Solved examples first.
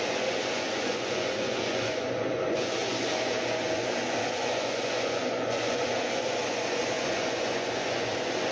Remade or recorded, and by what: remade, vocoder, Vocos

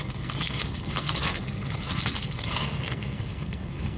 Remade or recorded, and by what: remade, codec, SNAC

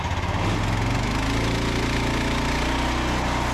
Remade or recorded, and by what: recorded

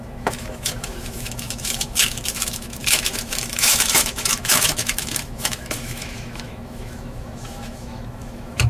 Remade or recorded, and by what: remade, autoencoder, DAC-VAE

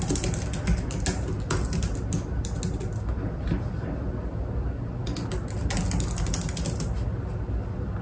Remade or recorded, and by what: recorded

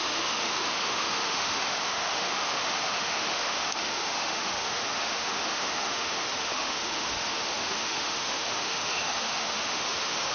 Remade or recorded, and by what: remade, autoencoder, DAC-VAE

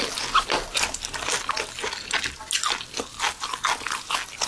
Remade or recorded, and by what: recorded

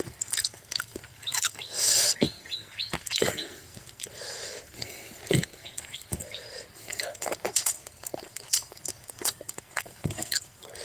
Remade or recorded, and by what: remade, codec, SNAC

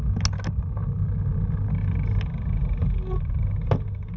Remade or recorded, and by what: recorded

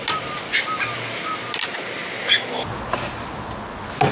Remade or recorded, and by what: recorded